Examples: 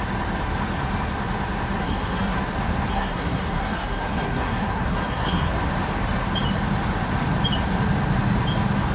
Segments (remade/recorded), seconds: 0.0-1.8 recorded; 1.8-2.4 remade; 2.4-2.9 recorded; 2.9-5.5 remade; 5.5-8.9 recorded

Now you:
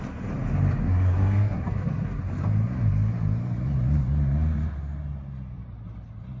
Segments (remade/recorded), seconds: 0.0-0.8 recorded; 0.8-2.2 remade; 2.2-6.4 recorded

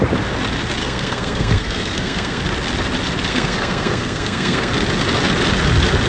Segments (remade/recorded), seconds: 0.0-0.8 recorded; 0.8-2.4 remade; 2.4-3.3 recorded; 3.3-4.7 remade; 4.7-6.1 recorded

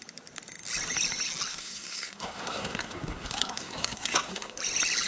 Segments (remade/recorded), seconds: 0.0-1.5 recorded; 1.5-4.6 remade; 4.6-5.1 recorded

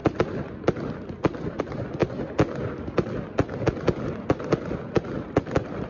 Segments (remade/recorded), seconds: 0.0-5.9 recorded